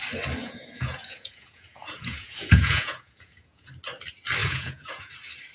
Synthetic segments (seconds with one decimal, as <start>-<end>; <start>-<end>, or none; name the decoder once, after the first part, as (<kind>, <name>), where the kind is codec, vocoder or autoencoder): 0.4-3.7 (vocoder, Vocos); 4.4-5.1